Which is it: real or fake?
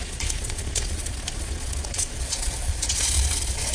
fake